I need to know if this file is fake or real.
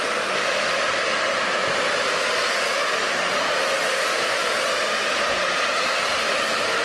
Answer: real